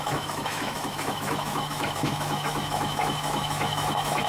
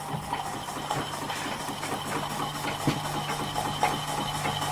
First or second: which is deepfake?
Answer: first